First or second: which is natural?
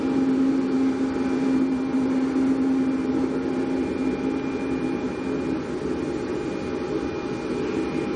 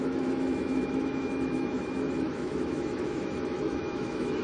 first